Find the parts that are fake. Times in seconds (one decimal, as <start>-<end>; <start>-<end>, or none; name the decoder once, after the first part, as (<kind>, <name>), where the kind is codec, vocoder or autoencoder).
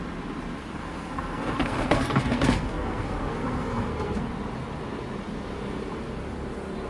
0.6-4.3 (codec, SNAC)